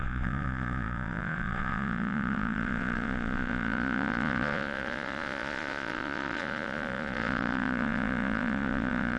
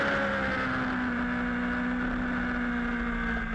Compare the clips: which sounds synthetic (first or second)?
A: first